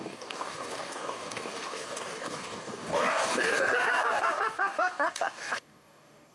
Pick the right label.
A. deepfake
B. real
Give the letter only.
A